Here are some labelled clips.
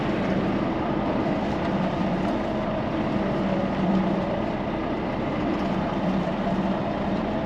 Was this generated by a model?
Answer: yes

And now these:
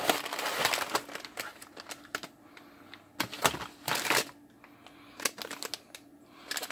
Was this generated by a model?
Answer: no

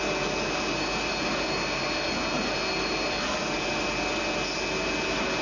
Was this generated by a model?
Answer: no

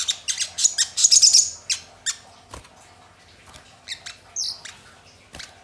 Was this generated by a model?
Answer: no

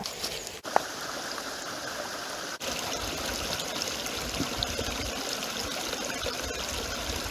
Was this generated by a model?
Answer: no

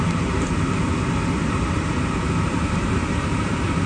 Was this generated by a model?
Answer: yes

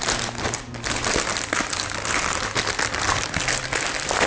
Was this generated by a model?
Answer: yes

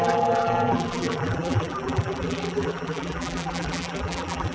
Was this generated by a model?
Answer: yes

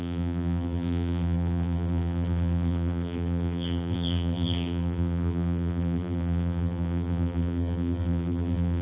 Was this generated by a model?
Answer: yes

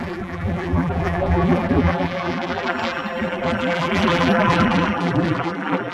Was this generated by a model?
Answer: yes